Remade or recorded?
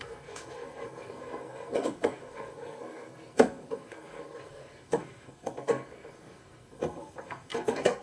remade